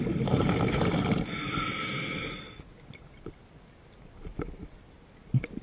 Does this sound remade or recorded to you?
recorded